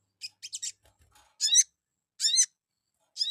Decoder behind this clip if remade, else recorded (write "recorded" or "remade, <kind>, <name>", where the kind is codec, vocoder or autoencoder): recorded